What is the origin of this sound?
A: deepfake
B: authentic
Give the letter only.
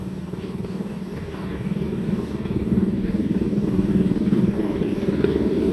A